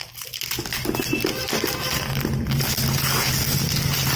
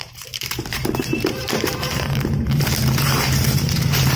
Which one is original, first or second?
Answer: first